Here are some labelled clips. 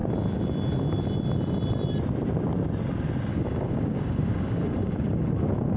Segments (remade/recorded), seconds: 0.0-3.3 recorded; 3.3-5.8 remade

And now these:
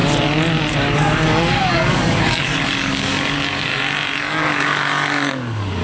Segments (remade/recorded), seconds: 0.0-0.7 recorded; 0.7-3.7 remade; 3.7-4.2 recorded; 4.2-5.8 remade

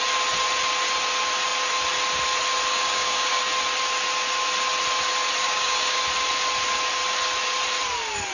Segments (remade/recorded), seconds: 0.0-2.7 recorded; 2.7-3.4 remade; 3.4-5.4 recorded; 5.4-6.0 remade; 6.0-8.3 recorded

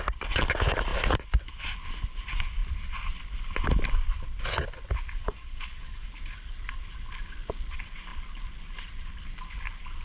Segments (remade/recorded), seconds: 0.0-5.2 recorded; 5.2-6.1 remade; 6.1-10.0 recorded

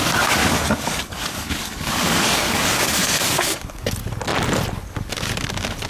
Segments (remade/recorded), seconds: 0.0-0.4 recorded; 0.4-3.9 remade; 3.9-5.9 recorded